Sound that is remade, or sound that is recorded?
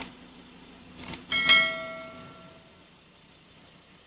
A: recorded